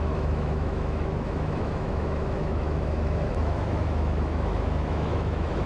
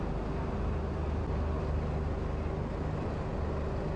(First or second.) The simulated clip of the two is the first